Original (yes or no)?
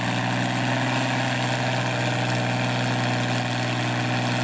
yes